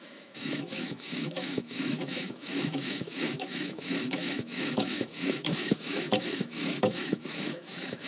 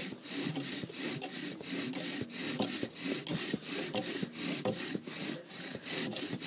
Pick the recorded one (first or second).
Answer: second